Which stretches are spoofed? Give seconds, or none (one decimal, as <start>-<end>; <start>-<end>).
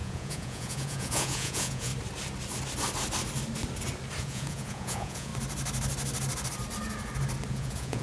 0.0-1.9; 4.2-5.3; 7.5-8.0